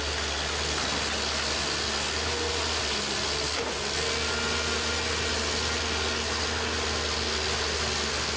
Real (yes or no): yes